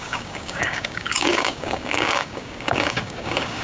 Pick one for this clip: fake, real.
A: fake